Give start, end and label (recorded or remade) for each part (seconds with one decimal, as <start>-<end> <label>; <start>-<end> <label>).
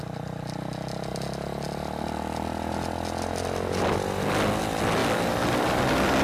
0.0-6.2 recorded